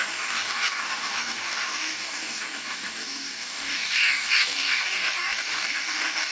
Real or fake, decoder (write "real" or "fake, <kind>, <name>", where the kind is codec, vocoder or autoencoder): fake, codec, DAC